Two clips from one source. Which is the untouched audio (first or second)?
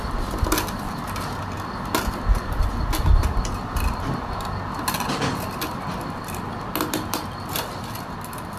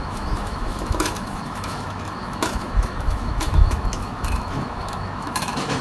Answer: first